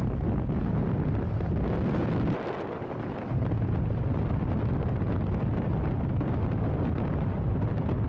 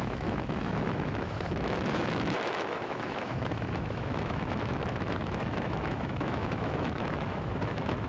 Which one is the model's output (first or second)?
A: second